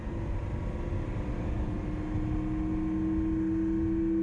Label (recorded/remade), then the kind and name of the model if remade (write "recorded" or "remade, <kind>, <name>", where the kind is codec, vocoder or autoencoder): recorded